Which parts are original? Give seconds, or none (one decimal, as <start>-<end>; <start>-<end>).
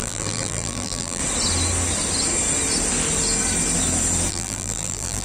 1.2-4.3